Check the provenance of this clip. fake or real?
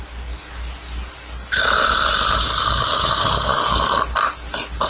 real